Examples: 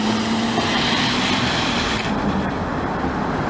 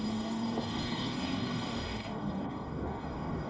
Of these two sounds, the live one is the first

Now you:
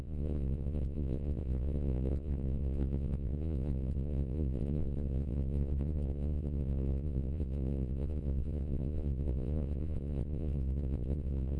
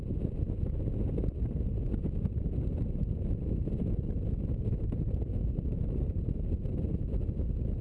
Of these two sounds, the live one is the second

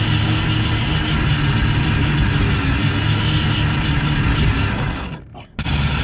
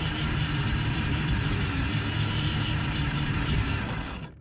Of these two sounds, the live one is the first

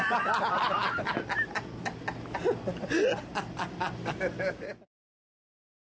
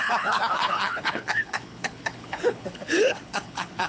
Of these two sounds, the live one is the first